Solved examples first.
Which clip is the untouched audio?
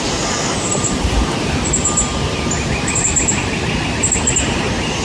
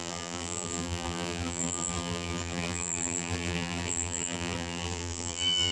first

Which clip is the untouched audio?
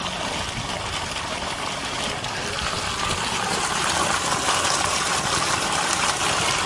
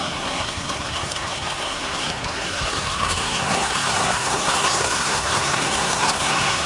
first